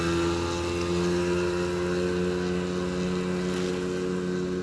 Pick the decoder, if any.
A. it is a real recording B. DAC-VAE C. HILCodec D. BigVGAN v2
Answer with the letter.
A